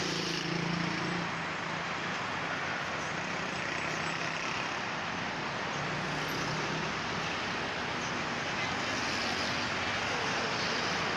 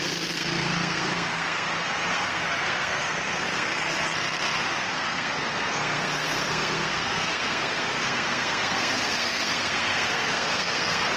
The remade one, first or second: second